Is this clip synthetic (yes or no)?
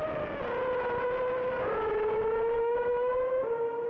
no